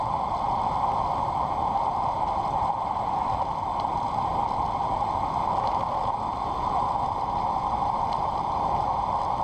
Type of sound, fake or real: real